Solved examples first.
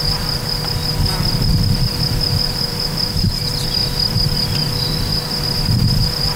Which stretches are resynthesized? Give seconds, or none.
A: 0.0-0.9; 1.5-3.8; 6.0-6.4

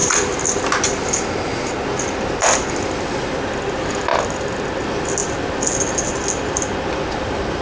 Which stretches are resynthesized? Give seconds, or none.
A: none